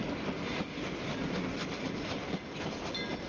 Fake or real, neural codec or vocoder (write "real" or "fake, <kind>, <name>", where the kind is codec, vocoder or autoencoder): real